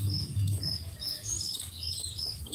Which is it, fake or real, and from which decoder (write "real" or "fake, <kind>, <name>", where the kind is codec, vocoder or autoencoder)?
fake, codec, DAC